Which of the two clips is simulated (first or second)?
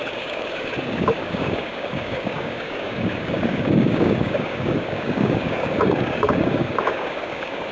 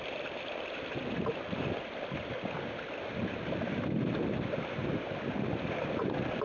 first